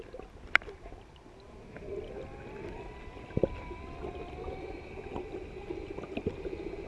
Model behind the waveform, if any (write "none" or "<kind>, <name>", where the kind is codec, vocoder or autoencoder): none